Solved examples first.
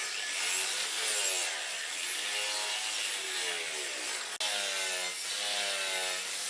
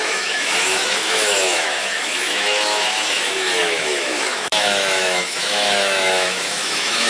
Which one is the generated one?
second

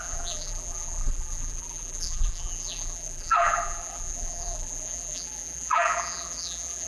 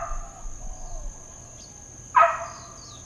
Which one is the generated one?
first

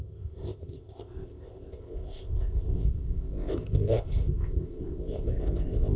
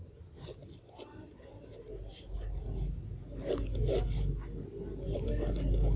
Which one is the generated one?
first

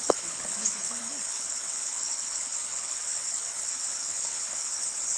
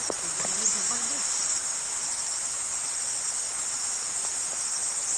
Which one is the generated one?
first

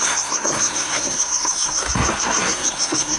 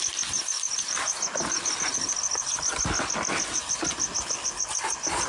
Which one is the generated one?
first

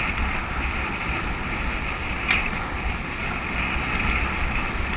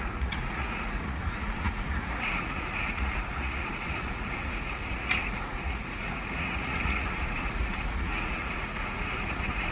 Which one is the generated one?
second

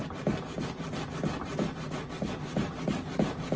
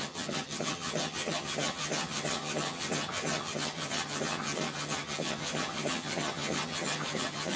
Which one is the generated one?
second